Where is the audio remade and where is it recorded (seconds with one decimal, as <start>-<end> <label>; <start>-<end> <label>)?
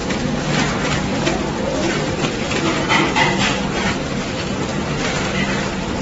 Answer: 0.0-2.9 recorded; 2.9-6.0 remade